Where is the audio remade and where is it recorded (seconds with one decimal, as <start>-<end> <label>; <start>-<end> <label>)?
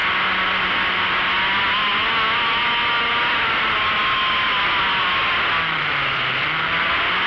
0.0-7.3 recorded